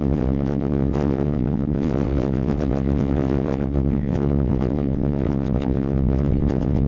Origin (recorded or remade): remade